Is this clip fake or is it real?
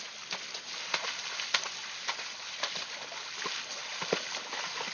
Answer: real